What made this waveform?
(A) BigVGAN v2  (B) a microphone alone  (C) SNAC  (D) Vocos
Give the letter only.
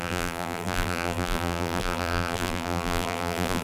A